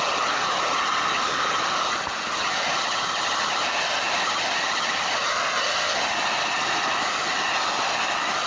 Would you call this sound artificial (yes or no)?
no